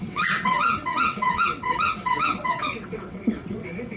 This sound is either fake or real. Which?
fake